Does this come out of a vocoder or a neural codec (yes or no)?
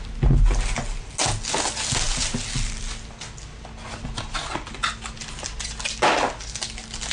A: no